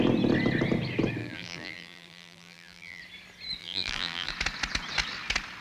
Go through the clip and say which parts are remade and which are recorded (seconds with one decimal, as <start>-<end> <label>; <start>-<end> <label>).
0.0-1.2 recorded; 1.2-3.0 remade; 3.0-3.6 recorded; 3.6-4.3 remade; 4.3-5.6 recorded